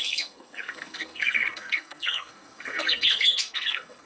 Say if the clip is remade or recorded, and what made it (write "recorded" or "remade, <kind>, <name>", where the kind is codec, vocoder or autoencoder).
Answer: remade, codec, SNAC